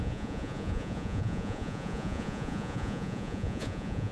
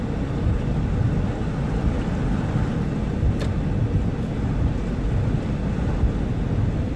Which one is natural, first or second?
second